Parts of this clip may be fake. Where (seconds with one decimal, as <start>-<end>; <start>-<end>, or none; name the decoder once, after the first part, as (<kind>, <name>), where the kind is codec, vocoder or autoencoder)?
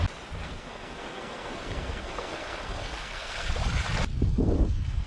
0.4-3.5 (codec, SNAC); 4.1-5.1